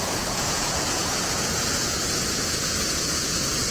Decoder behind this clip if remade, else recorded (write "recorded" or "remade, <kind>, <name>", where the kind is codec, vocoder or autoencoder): remade, vocoder, Vocos